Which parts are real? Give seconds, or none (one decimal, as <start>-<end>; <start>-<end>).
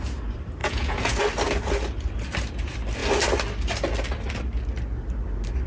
0.0-0.6; 1.2-5.7